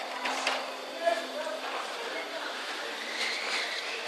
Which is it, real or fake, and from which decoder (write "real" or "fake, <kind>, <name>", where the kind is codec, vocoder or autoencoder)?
fake, vocoder, BigVGAN v2